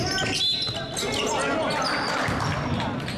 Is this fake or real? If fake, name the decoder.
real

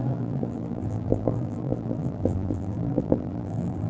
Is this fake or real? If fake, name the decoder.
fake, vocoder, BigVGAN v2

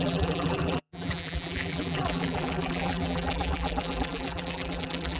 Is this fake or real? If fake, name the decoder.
fake, vocoder, BigVGAN v2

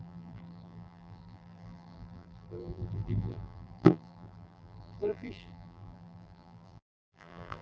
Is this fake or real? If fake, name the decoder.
fake, vocoder, BigVGAN v2